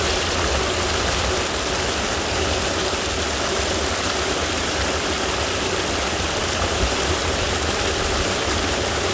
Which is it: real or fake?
real